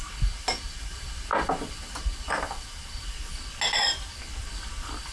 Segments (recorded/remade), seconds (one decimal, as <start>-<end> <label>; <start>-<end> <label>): 0.0-5.1 recorded